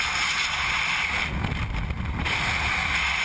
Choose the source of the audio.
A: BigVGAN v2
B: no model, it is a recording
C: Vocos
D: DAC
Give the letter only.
B